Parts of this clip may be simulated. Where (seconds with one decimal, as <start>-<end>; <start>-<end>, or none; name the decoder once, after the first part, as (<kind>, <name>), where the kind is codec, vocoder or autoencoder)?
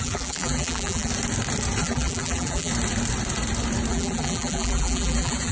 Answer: 0.0-1.1 (vocoder, BigVGAN v2); 1.8-2.7; 3.9-5.5